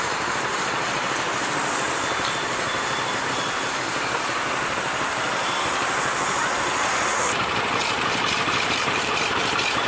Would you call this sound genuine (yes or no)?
no